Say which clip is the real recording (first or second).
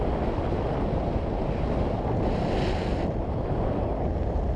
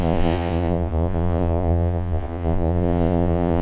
first